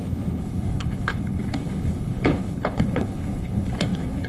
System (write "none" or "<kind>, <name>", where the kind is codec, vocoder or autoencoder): codec, HILCodec